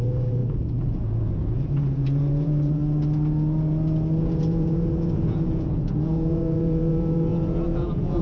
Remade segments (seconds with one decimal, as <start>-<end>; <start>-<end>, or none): 0.0-2.8; 4.2-8.2